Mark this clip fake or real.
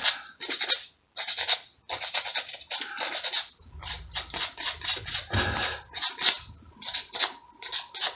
real